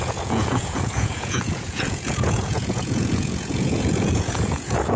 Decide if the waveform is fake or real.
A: fake